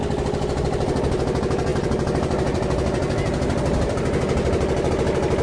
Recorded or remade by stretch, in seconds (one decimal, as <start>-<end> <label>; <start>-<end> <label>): 0.0-1.7 recorded; 1.7-4.9 remade; 4.9-5.4 recorded